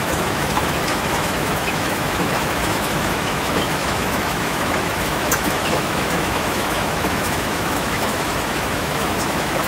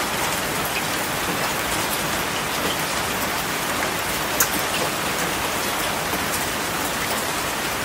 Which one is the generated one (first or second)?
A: first